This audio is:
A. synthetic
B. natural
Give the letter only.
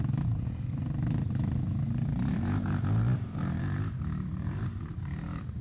A